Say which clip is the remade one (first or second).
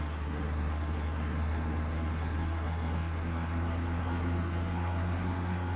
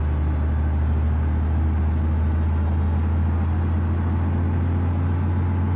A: first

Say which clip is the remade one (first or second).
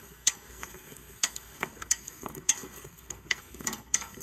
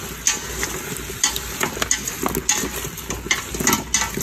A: first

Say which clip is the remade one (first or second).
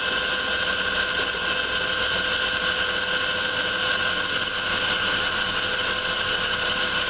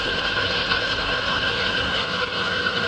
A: second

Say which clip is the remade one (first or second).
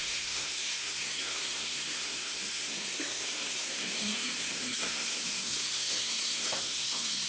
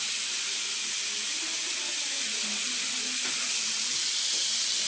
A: first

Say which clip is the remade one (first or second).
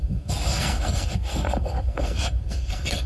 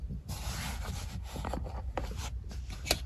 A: first